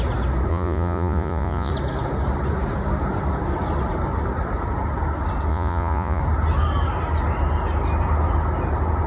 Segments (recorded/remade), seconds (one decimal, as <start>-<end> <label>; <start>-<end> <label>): 0.0-0.5 recorded; 0.5-1.7 remade; 1.7-5.5 recorded; 5.5-6.2 remade; 6.2-9.1 recorded